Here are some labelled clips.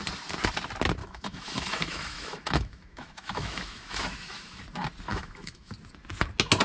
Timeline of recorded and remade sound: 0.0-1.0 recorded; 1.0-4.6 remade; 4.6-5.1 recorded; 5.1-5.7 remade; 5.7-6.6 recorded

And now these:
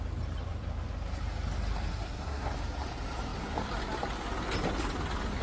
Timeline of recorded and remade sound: 0.0-1.9 recorded; 1.9-2.5 remade; 2.5-5.4 recorded

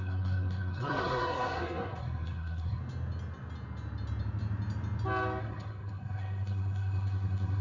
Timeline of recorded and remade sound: 0.0-2.8 remade; 2.8-5.4 recorded; 5.4-7.6 remade

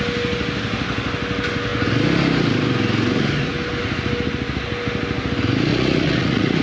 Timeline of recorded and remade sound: 0.0-5.7 recorded; 5.7-6.6 remade

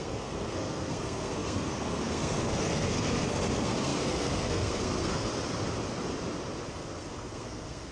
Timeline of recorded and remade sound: 0.0-5.3 remade; 5.3-6.7 recorded; 6.7-7.9 remade

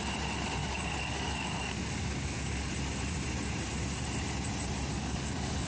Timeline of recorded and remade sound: 0.0-0.6 recorded; 0.6-2.7 remade; 2.7-4.9 recorded; 4.9-5.7 remade